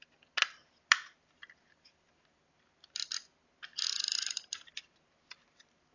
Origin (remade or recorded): recorded